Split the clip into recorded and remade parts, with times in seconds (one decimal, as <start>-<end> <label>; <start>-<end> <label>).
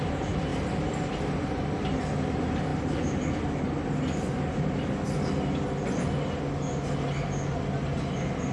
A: 0.0-8.5 recorded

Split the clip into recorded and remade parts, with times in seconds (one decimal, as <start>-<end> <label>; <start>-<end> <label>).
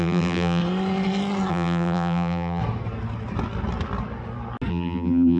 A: 0.0-0.6 remade; 0.6-1.5 recorded; 1.5-2.6 remade; 2.6-4.7 recorded; 4.7-5.4 remade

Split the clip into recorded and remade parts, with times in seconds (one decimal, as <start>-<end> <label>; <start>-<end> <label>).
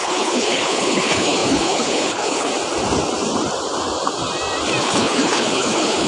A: 0.0-2.5 remade; 2.5-4.8 recorded; 4.8-6.1 remade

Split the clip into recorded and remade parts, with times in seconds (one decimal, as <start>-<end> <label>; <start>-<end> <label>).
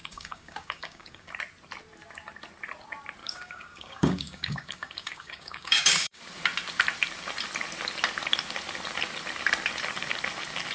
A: 0.0-1.3 remade; 1.3-3.2 recorded; 3.2-6.2 remade; 6.2-10.7 recorded